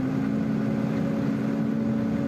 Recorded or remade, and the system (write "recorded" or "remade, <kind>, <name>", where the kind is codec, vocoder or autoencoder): recorded